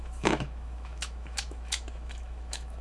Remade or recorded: remade